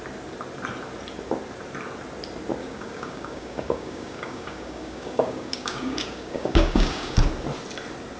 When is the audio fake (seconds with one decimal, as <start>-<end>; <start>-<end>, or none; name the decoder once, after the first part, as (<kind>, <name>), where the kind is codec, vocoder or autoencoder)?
2.6-7.2 (codec, DAC)

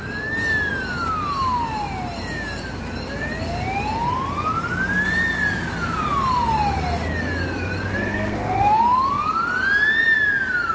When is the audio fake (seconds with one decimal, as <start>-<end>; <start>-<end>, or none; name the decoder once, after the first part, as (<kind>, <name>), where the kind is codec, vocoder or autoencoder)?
8.0-8.8 (codec, SNAC)

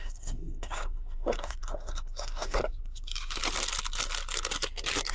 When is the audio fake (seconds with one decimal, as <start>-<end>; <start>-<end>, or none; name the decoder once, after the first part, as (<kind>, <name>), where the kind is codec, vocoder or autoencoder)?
0.0-3.4 (codec, SNAC)

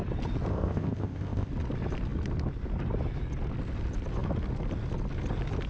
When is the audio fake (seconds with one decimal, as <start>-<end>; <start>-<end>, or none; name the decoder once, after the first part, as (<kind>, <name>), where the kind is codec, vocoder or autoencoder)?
0.5-1.5 (codec, ZipCodec)

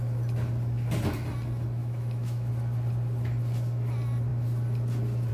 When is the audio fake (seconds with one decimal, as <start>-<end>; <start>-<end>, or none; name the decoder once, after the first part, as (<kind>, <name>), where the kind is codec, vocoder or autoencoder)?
1.8-2.5 (autoencoder, DAC-VAE)